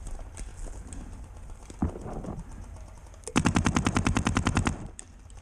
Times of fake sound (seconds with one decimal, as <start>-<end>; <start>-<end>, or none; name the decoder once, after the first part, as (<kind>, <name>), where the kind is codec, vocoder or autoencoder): 0.0-0.5 (vocoder, BigVGAN v2); 1.2-1.8; 3.4-5.4